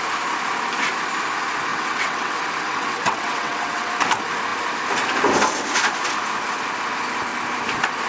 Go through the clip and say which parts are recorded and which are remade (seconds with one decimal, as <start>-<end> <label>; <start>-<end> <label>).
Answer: 0.0-1.7 recorded; 1.7-3.9 remade; 3.9-8.1 recorded